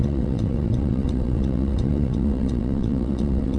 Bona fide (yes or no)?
no